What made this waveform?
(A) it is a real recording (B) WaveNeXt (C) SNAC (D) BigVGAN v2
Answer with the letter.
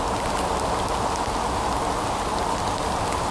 A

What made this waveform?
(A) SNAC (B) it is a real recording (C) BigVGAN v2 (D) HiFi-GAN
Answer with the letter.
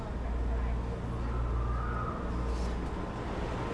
B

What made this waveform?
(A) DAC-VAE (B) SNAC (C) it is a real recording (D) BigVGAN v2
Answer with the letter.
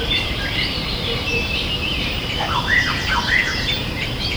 D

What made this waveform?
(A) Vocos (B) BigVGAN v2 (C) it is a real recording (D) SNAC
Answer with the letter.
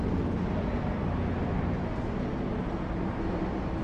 C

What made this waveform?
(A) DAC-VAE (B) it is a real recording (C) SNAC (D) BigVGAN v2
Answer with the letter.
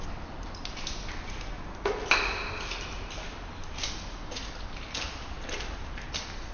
B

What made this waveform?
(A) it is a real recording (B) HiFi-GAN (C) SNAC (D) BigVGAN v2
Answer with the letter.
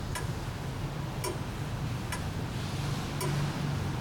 A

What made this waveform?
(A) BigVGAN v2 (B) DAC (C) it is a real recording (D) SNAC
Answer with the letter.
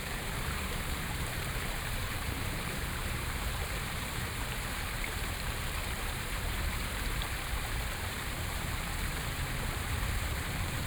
A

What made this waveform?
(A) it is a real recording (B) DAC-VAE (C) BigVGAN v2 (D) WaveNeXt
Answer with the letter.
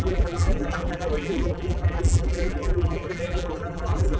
C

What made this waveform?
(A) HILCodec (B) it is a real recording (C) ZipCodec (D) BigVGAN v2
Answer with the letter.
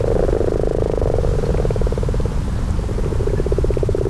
B